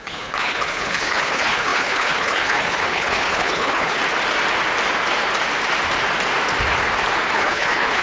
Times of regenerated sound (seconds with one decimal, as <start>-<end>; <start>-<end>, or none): 0.0-4.0; 7.3-8.0